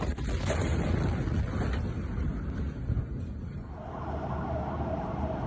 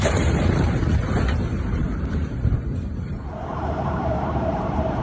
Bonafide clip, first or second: first